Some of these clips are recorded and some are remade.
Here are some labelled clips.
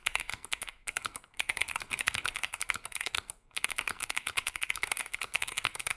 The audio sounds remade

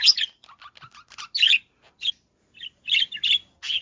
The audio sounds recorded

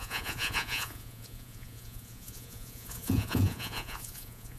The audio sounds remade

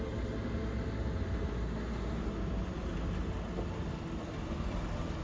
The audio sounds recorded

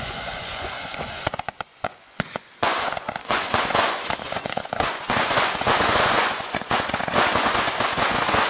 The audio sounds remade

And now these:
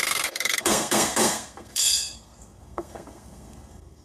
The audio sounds remade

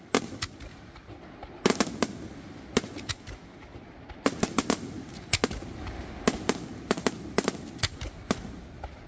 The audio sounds recorded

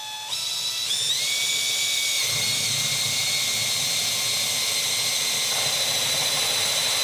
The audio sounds recorded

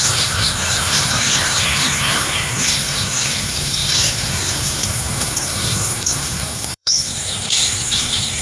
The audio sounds remade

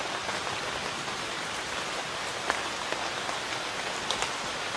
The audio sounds recorded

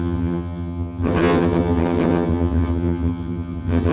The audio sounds remade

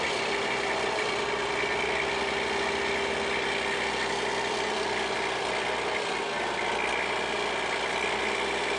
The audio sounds recorded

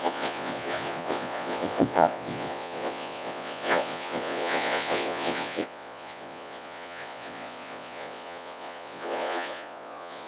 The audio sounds remade